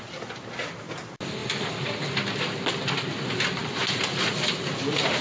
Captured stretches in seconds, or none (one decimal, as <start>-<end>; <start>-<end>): 0.0-5.2